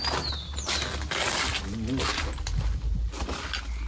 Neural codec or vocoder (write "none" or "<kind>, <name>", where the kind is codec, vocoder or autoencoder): none